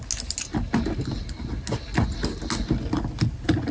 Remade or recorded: recorded